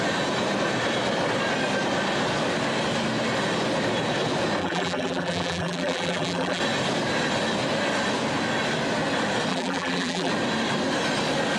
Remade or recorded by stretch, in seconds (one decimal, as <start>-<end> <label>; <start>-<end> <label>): 0.0-4.6 recorded; 4.6-6.6 remade; 6.6-9.5 recorded; 9.5-10.3 remade; 10.3-11.6 recorded

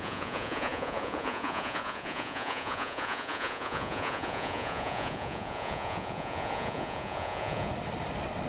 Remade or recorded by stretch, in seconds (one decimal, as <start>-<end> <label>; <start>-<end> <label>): 0.0-7.7 remade; 7.7-8.5 recorded

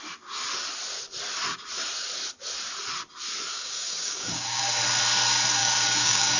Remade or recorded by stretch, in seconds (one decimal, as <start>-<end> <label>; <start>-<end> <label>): 0.0-3.5 recorded; 3.5-4.8 remade; 4.8-5.6 recorded; 5.6-6.4 remade

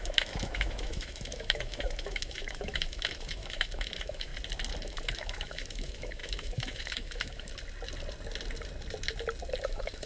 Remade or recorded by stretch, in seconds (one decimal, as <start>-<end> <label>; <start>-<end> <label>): 0.0-4.3 remade; 4.3-4.8 recorded; 4.8-7.5 remade; 7.5-9.6 recorded; 9.6-10.1 remade

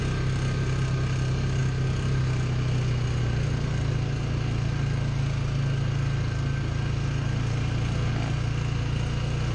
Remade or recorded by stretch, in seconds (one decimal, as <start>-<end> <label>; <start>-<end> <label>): 0.0-9.5 recorded

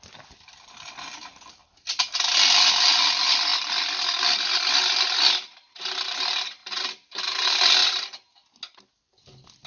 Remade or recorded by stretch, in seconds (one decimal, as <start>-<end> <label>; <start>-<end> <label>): 0.0-3.5 recorded; 3.5-4.4 remade; 4.4-6.6 recorded; 6.6-7.2 remade; 7.2-9.7 recorded